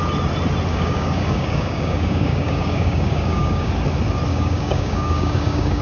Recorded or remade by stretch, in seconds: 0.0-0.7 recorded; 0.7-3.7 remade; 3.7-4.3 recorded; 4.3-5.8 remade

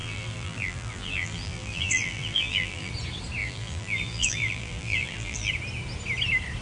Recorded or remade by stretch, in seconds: 0.0-2.9 remade; 2.9-3.4 recorded; 3.4-5.5 remade; 5.5-6.6 recorded

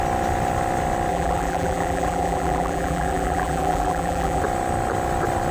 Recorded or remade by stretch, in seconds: 0.0-1.1 recorded; 1.1-4.4 remade; 4.4-5.5 recorded

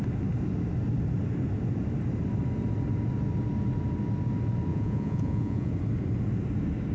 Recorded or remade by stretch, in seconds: 0.0-4.7 recorded; 4.7-5.7 remade; 5.7-6.9 recorded

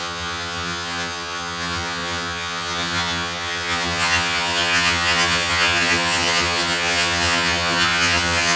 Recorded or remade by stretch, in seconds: 0.0-8.6 remade